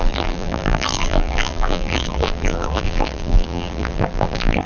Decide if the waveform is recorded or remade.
remade